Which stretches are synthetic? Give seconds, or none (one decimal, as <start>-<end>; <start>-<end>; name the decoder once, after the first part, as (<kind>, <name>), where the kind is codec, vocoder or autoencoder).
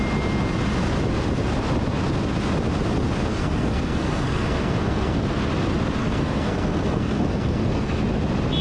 3.3-5.2 (codec, SNAC); 6.0-8.0